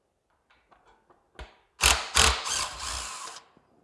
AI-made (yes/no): no